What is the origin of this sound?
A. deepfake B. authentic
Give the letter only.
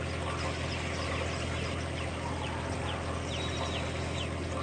B